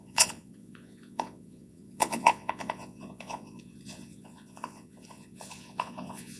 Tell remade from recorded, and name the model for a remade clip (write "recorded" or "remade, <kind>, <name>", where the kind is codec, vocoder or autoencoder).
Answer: remade, vocoder, Vocos